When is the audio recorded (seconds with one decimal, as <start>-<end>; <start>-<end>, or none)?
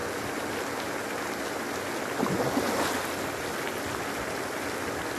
0.0-5.2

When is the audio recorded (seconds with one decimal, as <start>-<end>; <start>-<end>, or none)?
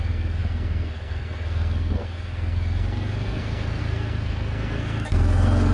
none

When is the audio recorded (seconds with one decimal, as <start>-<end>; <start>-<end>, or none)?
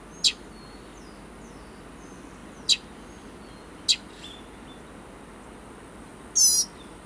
0.0-7.1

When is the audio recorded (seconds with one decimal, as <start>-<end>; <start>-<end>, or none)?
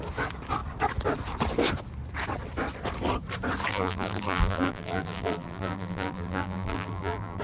0.0-3.7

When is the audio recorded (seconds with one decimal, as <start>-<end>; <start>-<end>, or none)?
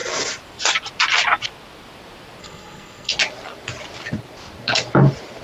0.0-2.4; 3.1-5.4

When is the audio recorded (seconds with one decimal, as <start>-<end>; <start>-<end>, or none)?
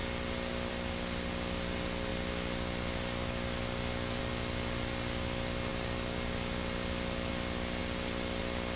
0.0-8.8